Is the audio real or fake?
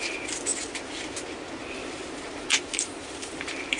real